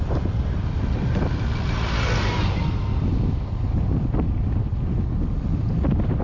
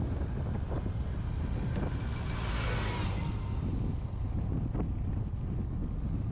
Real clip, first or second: second